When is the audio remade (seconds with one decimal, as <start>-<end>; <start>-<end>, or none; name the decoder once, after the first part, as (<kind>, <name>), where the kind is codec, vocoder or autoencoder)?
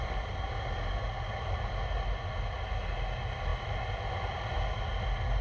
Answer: none